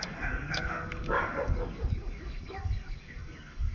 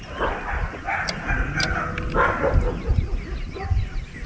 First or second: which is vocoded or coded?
first